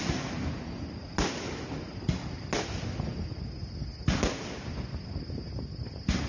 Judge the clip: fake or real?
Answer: real